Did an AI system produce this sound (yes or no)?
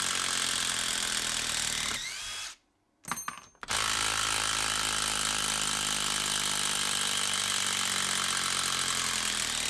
no